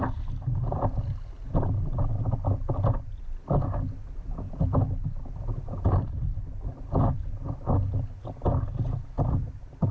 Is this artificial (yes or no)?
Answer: no